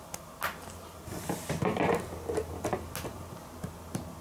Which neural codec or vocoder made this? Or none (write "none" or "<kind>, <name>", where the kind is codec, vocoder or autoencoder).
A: none